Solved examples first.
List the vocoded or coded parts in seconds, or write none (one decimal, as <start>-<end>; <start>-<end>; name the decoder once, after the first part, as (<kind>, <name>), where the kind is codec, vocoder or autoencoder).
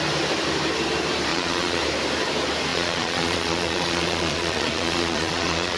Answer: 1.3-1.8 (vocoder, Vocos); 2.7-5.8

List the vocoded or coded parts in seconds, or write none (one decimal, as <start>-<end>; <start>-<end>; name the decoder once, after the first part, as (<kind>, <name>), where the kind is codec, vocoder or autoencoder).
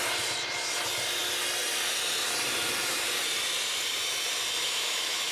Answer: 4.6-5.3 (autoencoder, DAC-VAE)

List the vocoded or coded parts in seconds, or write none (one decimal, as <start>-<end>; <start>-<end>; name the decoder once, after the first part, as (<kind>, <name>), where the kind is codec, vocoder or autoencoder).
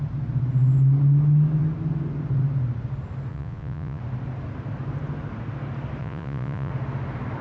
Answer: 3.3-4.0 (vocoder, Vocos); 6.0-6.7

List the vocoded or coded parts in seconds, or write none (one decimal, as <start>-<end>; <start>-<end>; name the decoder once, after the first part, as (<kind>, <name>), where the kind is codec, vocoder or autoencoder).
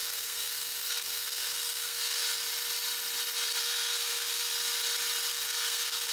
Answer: 0.0-2.2 (codec, SNAC); 3.6-4.5; 5.3-6.1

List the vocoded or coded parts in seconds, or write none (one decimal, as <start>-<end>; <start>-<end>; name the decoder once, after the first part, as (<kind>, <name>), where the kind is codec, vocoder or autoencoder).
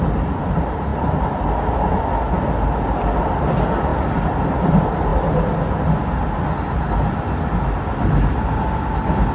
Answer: none